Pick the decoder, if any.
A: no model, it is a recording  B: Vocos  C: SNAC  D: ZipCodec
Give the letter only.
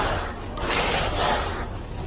A